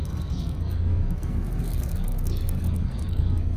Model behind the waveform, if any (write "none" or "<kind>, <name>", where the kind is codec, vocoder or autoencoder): codec, SNAC